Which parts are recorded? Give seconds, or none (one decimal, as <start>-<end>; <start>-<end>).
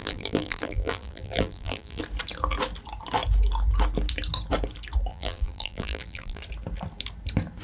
2.0-5.1; 6.4-7.6